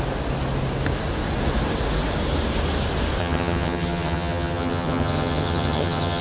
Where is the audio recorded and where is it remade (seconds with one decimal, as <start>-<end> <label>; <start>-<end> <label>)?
0.0-3.2 recorded; 3.2-6.2 remade

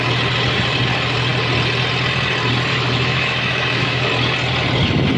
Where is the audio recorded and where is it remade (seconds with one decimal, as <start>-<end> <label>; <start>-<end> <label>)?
0.0-2.7 recorded; 2.7-4.1 remade; 4.1-5.2 recorded

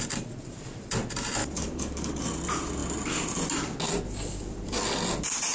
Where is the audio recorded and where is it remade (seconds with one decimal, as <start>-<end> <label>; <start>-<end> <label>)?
0.0-1.4 recorded; 1.4-2.2 remade; 2.2-5.5 recorded

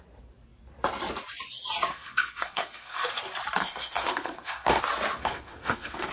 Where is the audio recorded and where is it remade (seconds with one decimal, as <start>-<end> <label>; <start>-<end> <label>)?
0.0-1.9 recorded; 1.9-3.1 remade; 3.1-3.6 recorded; 3.6-4.8 remade; 4.8-5.2 recorded; 5.2-6.1 remade